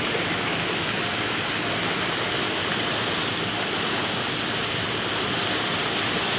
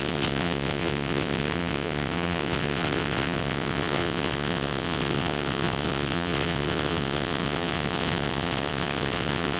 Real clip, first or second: first